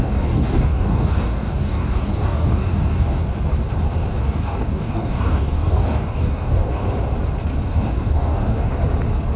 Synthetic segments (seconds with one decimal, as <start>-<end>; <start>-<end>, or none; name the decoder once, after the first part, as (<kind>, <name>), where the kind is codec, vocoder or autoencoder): 0.0-3.2 (codec, DAC); 4.2-6.8; 7.7-8.8